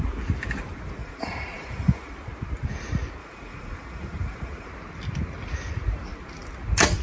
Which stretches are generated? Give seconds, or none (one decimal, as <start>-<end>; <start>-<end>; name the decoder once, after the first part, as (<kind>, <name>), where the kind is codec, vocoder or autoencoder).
1.0-2.1 (vocoder, Vocos); 3.2-4.7